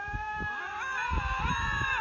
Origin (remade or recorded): remade